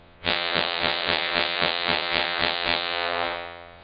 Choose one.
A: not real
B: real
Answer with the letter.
A